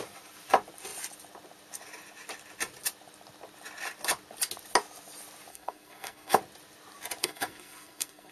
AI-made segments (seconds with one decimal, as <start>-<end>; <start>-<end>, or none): 5.5-6.4; 7.2-8.3